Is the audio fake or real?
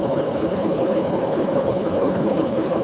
fake